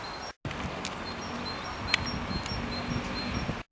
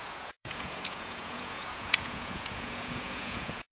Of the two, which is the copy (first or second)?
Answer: second